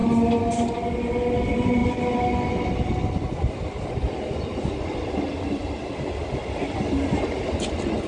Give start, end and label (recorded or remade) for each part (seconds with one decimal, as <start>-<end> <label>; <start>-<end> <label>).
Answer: 0.0-8.1 recorded